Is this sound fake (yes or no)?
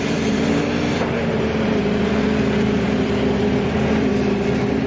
yes